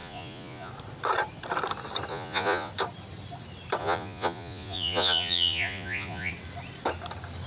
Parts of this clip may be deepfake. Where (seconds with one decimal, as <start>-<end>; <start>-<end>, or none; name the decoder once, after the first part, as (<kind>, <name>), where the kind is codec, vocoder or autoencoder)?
0.0-0.7 (vocoder, Vocos); 2.1-2.7; 3.8-6.3